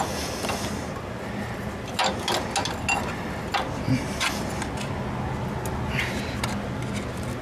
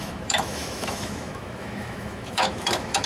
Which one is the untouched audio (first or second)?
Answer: first